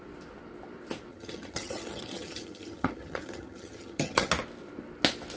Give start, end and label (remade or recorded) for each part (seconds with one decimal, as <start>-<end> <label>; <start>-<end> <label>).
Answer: 0.0-1.1 recorded; 1.1-4.3 remade; 4.3-5.4 recorded